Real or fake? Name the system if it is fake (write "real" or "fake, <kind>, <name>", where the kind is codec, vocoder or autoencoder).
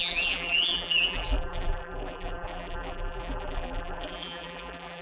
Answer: fake, vocoder, BigVGAN v2